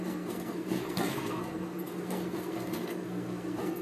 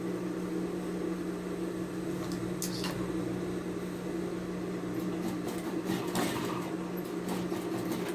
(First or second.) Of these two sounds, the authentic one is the second